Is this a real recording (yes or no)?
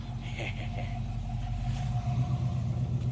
yes